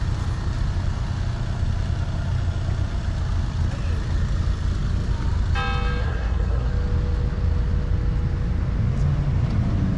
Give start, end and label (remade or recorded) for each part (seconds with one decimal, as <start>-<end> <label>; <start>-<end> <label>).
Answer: 0.0-6.0 recorded; 6.0-6.7 remade; 6.7-10.0 recorded